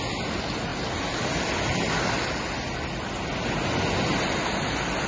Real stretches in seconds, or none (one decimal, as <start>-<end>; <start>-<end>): 0.0-5.1